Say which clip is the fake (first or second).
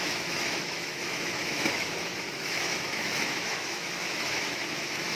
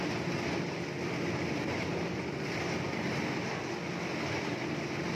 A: first